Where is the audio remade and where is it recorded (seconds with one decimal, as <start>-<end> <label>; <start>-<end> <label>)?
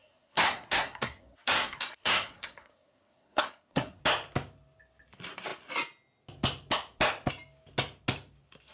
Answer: 0.0-4.0 remade; 4.0-8.7 recorded